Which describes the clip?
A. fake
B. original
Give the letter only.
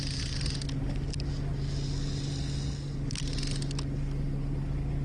B